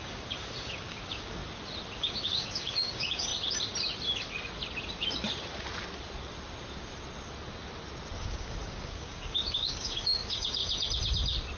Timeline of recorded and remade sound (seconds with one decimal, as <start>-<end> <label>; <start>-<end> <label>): 0.0-1.4 remade; 1.4-2.0 recorded; 2.0-3.3 remade; 3.3-8.2 recorded; 8.2-10.6 remade; 10.6-11.6 recorded

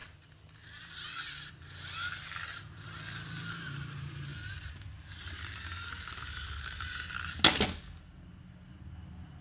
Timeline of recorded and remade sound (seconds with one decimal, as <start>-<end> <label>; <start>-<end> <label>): 0.0-9.4 recorded

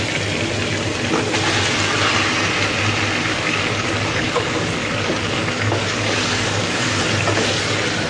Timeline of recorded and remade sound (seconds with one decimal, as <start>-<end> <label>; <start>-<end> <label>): 0.0-3.3 recorded; 3.3-7.0 remade; 7.0-8.1 recorded

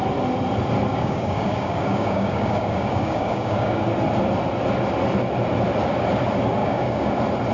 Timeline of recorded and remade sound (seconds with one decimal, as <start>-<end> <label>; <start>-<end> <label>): 0.0-0.9 recorded; 0.9-3.8 remade; 3.8-6.6 recorded; 6.6-7.1 remade; 7.1-7.5 recorded